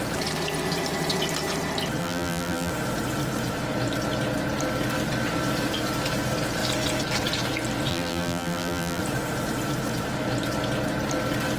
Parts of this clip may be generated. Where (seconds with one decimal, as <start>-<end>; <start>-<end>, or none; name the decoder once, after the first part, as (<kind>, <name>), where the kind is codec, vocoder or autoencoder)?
2.0-2.7 (vocoder, BigVGAN v2); 7.9-9.0